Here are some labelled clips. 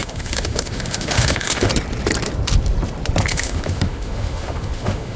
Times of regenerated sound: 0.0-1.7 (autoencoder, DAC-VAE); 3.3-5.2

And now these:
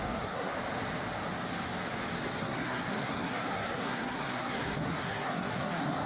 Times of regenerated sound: 0.0-0.5 (codec, SNAC); 2.4-6.1

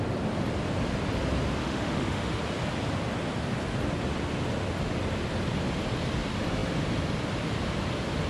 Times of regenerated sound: 1.6-2.4 (autoencoder, DAC-VAE)

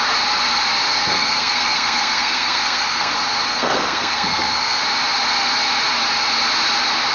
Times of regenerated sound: 0.9-3.1 (codec, SNAC); 3.5-4.8